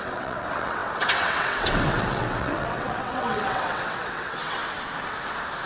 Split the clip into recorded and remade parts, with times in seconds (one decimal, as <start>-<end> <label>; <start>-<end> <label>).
0.0-4.6 remade; 4.6-5.7 recorded